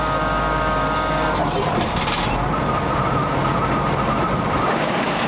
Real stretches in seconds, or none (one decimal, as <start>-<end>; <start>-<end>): 1.4-4.6